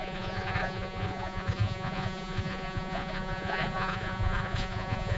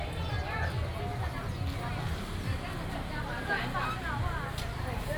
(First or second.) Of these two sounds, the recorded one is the second